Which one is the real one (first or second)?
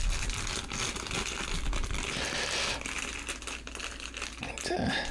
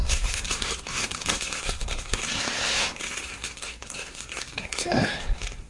first